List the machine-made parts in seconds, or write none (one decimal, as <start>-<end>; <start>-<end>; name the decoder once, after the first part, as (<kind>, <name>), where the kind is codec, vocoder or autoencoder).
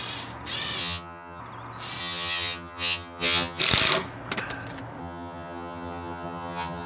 0.8-1.4 (vocoder, HiFi-GAN); 2.0-3.6; 5.0-6.9